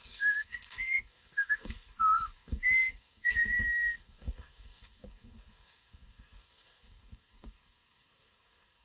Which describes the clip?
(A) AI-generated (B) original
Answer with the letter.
A